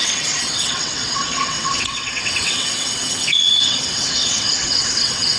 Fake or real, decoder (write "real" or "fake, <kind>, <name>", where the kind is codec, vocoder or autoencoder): fake, vocoder, WaveNeXt